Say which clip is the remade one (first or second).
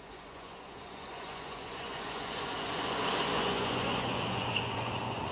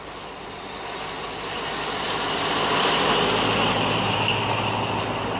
first